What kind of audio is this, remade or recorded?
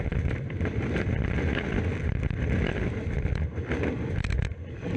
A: recorded